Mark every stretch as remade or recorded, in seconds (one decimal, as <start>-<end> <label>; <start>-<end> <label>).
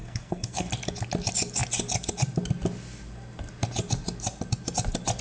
0.0-0.7 remade; 0.7-5.2 recorded